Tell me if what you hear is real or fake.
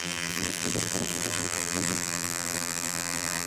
fake